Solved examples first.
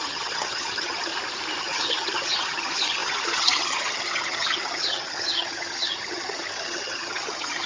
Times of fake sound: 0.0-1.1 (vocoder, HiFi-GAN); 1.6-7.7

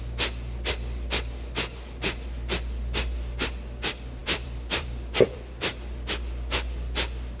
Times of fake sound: 4.2-5.7 (vocoder, BigVGAN v2)

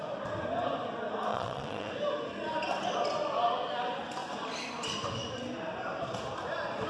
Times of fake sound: 1.3-1.9 (vocoder, WaveNeXt)

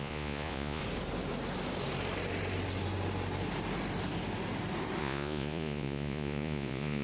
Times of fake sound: 0.0-0.8 (vocoder, Vocos); 5.0-7.0

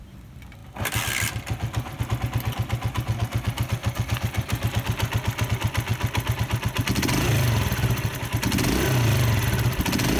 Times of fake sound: none

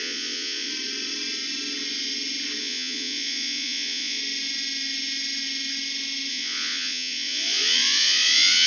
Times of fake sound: 0.0-0.7 (vocoder, Vocos); 2.6-4.2; 6.3-8.7

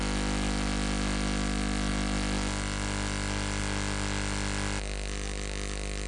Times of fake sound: none

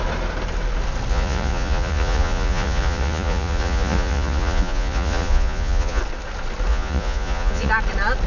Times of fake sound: 1.1-6.0 (vocoder, Vocos); 6.7-7.7